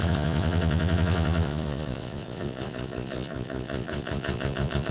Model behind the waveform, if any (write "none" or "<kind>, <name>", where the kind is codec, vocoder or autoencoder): vocoder, Vocos